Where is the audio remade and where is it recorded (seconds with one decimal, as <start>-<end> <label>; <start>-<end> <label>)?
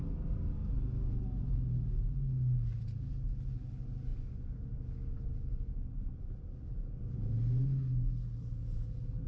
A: 0.0-9.3 recorded